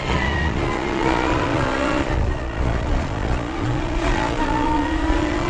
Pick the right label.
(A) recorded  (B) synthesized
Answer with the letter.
B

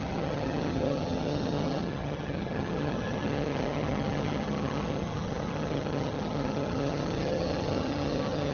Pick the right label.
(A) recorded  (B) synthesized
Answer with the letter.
B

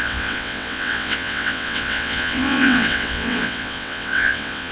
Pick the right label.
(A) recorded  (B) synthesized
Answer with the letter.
B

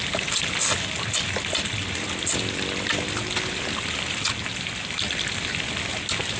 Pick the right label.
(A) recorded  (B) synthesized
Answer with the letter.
A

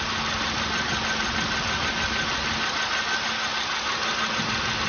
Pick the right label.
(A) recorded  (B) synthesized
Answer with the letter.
A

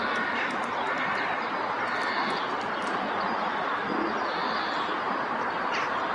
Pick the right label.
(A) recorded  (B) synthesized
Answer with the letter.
A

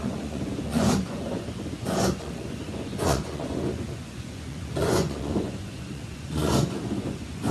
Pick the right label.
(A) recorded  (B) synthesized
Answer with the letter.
B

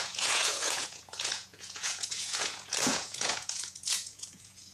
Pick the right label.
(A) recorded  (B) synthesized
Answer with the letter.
B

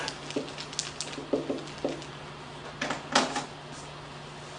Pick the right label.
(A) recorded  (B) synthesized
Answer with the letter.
A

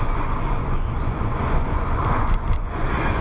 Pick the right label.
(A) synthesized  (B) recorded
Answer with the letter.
A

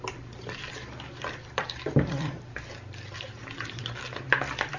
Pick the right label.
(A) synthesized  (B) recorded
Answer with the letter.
A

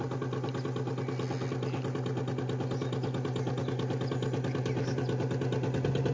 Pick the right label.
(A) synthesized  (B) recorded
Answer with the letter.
B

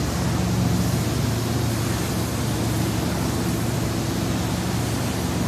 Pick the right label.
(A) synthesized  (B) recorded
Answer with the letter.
B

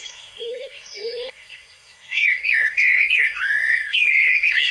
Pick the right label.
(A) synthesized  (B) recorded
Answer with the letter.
A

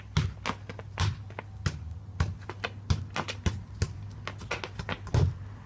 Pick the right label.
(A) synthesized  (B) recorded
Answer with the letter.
B